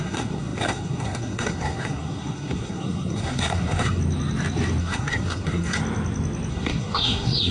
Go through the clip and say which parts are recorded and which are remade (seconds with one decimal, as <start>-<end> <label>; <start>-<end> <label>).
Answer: 0.0-4.0 remade; 4.0-4.8 recorded; 4.8-5.8 remade; 5.8-6.5 recorded; 6.5-7.5 remade